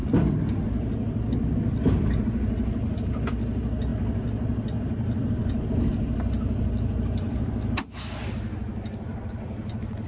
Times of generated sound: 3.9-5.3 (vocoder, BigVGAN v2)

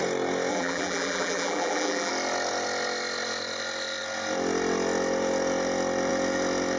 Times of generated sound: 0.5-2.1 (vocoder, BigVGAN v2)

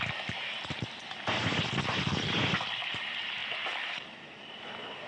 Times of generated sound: none

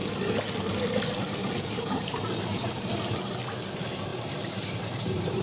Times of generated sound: 1.4-2.9 (vocoder, BigVGAN v2); 4.1-5.4

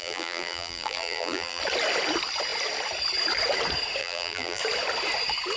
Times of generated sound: 0.0-1.6 (vocoder, BigVGAN v2); 4.0-4.6